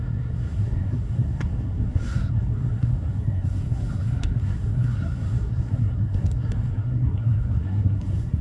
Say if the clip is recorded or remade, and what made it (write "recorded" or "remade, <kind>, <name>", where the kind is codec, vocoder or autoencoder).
remade, codec, SNAC